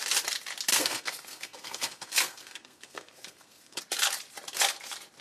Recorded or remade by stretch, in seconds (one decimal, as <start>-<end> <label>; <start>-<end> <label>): 0.0-0.7 recorded; 0.7-3.8 remade; 3.8-5.2 recorded